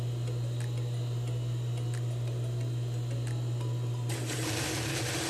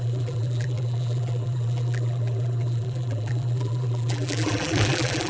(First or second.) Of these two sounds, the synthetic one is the second